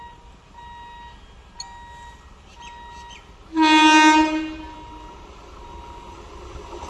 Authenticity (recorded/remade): recorded